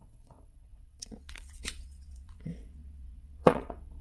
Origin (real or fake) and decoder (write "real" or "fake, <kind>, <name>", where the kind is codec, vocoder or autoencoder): fake, vocoder, WaveNeXt